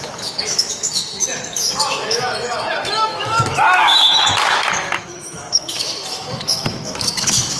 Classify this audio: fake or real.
fake